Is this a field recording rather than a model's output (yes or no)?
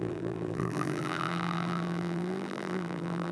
no